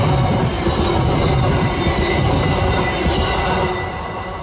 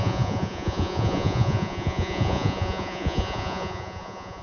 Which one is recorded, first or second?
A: first